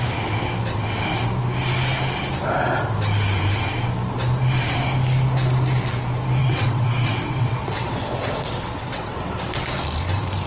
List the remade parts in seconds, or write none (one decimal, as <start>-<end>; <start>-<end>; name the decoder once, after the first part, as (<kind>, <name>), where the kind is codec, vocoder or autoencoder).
6.4-9.3 (vocoder, WaveNeXt)